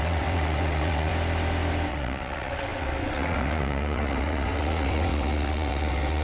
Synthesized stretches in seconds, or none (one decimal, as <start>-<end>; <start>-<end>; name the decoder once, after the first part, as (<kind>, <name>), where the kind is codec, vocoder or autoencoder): 0.0-1.1 (vocoder, WaveNeXt); 1.9-6.2